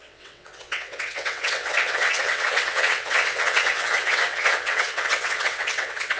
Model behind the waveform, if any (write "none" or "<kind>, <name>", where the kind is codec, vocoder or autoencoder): vocoder, WaveNeXt